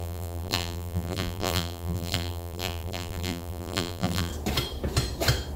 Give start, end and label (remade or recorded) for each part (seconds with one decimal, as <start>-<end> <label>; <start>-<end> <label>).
0.0-4.3 remade; 4.3-5.6 recorded